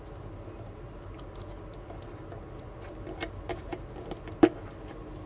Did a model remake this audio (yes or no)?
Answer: no